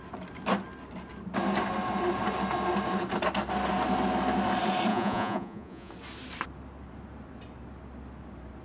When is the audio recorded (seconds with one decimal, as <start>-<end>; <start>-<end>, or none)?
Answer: 0.0-4.9; 5.9-8.6